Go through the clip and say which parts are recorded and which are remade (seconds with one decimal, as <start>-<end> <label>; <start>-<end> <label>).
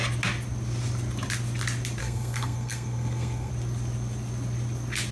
0.0-2.0 recorded; 2.0-3.5 remade; 3.5-5.1 recorded